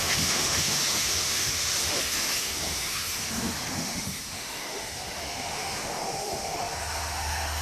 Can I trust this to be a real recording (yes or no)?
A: no